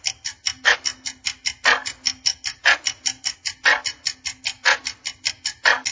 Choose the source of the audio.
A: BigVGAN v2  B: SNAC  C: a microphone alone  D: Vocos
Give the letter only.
C